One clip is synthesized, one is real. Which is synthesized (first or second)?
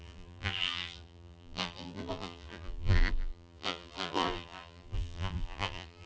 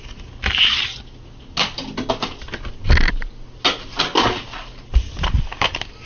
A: first